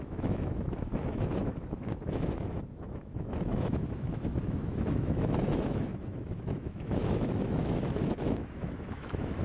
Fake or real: fake